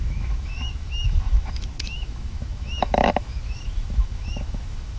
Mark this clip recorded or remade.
remade